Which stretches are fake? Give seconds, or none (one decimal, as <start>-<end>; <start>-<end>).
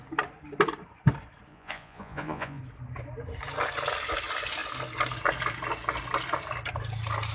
1.5-2.6